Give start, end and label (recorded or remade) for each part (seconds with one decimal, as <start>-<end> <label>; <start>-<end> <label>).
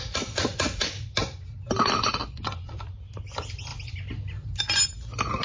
0.0-2.2 recorded; 2.2-2.7 remade; 2.7-5.4 recorded